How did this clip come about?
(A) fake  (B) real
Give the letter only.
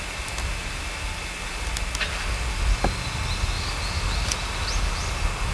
B